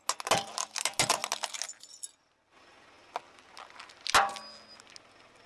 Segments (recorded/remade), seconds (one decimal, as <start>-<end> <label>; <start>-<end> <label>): 0.0-5.5 recorded